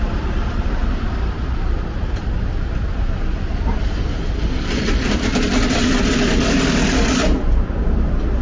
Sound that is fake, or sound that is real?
fake